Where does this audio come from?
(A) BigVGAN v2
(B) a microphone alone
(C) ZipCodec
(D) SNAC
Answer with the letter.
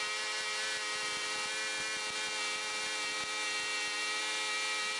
B